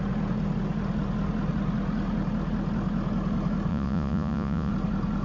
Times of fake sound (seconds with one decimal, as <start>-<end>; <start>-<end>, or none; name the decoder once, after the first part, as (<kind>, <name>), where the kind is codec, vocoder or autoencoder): 3.7-4.7 (vocoder, Vocos)